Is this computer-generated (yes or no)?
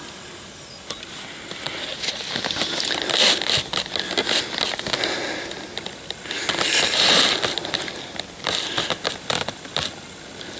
no